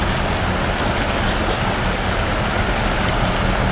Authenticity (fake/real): real